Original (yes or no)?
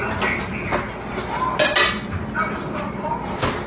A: yes